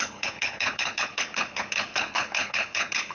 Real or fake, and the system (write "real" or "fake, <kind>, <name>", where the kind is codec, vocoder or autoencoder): fake, codec, HILCodec